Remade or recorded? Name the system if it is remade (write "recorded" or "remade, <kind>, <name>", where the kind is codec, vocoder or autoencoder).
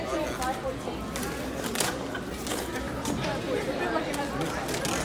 recorded